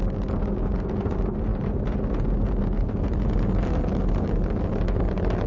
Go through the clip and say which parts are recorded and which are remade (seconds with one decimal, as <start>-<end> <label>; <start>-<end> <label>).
0.0-5.5 recorded